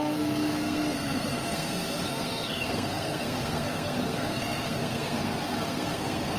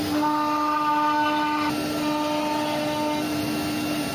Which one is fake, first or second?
first